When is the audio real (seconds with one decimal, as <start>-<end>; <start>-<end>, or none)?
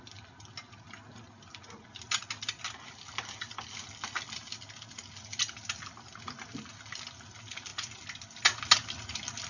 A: 0.0-9.5